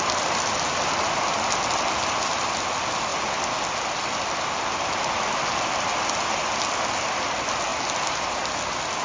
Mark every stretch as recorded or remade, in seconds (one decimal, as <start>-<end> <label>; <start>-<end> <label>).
0.0-9.0 recorded